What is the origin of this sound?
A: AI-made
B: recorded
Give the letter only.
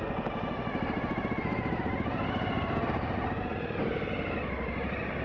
B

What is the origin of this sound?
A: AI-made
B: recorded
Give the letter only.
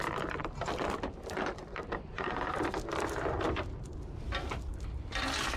A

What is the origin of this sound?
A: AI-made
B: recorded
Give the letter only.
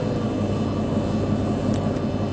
B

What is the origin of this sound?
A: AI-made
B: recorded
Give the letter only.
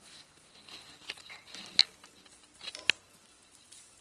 B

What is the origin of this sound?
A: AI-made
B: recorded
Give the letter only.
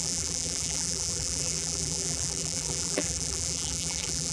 A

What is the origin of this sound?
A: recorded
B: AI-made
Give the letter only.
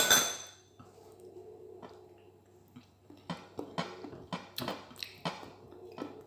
A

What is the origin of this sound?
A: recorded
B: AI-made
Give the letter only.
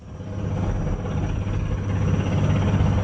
A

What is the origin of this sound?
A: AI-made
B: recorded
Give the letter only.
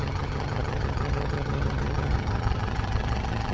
A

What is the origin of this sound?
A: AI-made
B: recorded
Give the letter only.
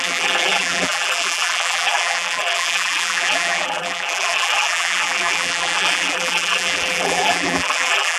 A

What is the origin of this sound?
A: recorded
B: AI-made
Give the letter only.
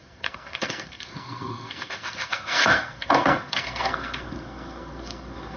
B